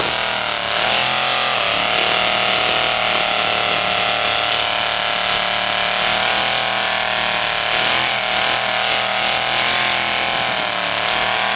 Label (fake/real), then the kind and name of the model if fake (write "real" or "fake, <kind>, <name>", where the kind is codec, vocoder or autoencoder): real